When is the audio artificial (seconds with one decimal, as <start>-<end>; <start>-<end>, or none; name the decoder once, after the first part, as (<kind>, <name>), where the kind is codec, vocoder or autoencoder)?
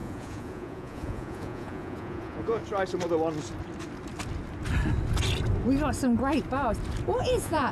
0.0-2.6 (vocoder, Vocos); 7.2-7.7